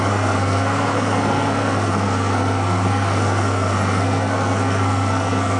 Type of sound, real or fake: fake